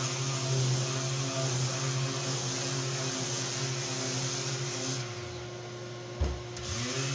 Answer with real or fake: real